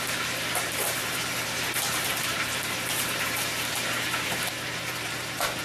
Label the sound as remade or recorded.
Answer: remade